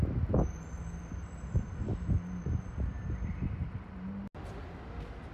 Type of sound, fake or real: real